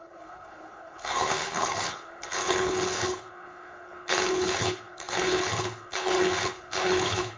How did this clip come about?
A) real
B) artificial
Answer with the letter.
B